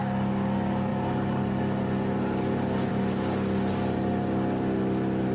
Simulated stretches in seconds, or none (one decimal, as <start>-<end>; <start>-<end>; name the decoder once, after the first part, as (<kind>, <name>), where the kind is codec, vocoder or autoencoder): none